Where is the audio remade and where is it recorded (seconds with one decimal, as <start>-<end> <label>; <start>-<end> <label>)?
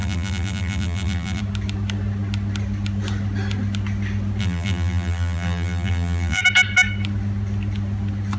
0.0-1.4 remade; 1.4-4.4 recorded; 4.4-6.4 remade; 6.4-8.4 recorded